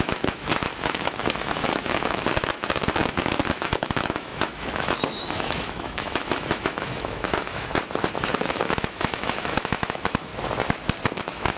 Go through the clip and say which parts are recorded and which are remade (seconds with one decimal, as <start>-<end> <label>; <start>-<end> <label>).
0.0-7.7 remade; 7.7-8.3 recorded; 8.3-10.3 remade; 10.3-11.2 recorded; 11.2-11.6 remade